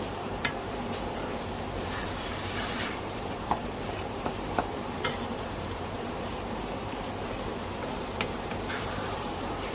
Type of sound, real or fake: fake